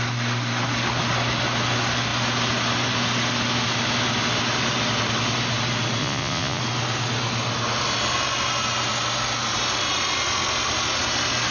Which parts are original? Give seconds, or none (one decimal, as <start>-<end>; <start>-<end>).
0.0-6.0; 6.6-11.5